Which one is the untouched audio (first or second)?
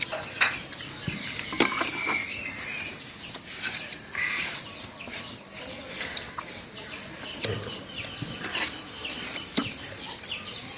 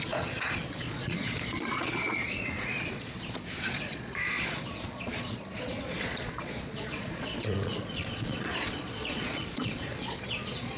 first